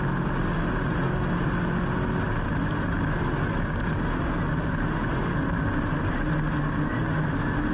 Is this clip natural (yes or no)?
yes